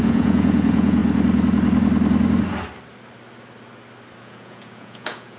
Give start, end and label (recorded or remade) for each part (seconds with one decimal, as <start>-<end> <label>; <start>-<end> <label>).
0.0-1.0 remade; 1.0-4.2 recorded; 4.2-5.4 remade